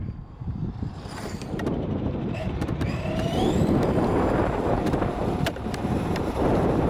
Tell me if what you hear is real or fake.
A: fake